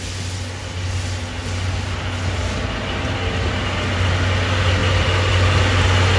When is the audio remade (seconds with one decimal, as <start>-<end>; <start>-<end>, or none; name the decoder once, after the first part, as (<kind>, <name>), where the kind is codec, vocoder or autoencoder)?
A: none